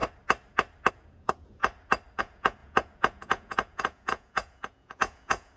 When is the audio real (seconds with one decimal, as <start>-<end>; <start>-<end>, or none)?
0.0-0.9; 1.6-2.2